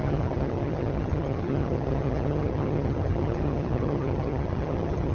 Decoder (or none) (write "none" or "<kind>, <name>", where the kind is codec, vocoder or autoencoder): vocoder, HiFi-GAN